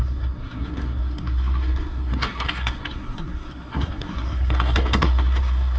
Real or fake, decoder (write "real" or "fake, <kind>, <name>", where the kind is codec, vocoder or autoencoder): fake, codec, SNAC